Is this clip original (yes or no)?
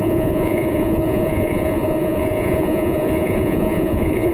no